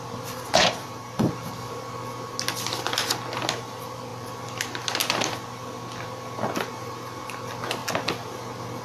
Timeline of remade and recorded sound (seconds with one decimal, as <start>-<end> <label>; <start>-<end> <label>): 0.0-0.6 recorded; 0.6-1.3 remade; 1.3-8.8 recorded